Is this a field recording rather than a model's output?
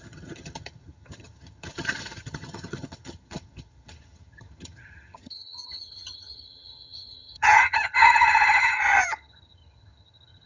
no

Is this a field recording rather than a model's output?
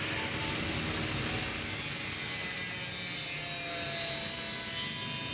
yes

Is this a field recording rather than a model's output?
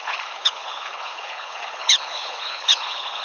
no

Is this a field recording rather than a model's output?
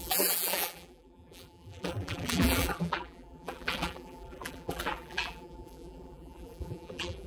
no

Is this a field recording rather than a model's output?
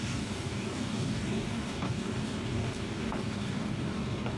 no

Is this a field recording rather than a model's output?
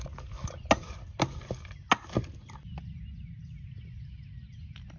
yes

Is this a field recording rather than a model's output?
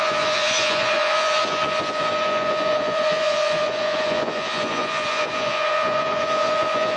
no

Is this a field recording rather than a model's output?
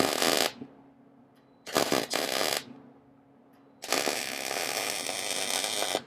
yes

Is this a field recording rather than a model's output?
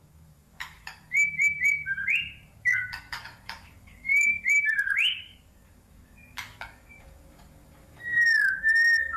no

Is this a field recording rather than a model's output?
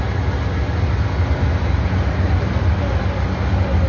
yes